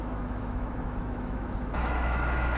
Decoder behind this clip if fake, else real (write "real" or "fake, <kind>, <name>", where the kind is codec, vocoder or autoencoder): fake, autoencoder, DAC-VAE